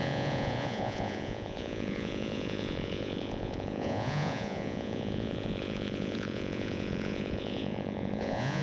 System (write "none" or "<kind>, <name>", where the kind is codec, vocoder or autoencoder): vocoder, Vocos